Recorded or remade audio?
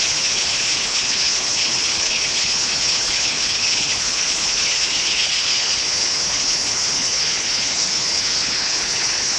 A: remade